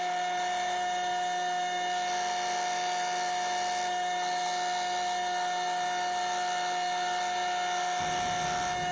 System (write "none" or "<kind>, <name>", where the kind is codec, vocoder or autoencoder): none